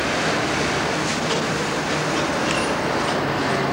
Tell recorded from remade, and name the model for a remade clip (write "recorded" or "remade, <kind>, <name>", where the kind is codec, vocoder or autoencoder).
recorded